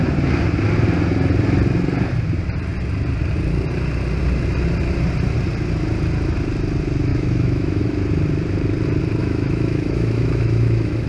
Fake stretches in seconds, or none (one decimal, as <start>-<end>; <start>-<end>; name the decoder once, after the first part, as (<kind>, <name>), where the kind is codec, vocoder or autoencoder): 7.1-7.8 (autoencoder, DAC-VAE); 9.2-11.1